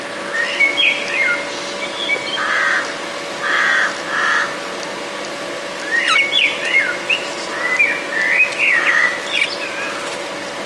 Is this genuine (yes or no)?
yes